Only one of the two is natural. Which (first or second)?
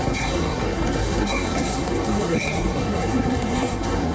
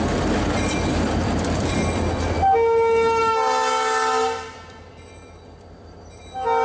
second